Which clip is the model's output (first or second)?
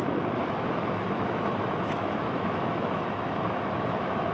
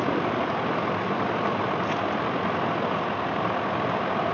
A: first